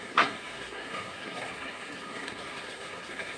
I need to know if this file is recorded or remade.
remade